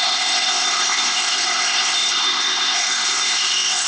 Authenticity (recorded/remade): remade